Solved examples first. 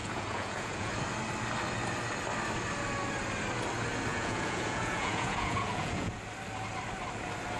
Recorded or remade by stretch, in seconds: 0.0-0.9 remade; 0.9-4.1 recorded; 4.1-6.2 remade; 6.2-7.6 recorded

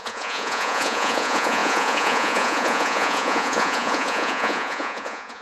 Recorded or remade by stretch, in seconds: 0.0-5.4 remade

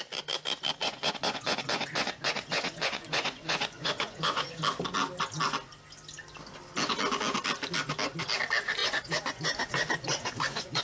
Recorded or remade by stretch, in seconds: 0.0-0.8 recorded; 0.8-4.6 remade; 4.6-8.8 recorded; 8.8-10.8 remade